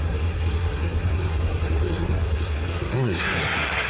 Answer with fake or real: fake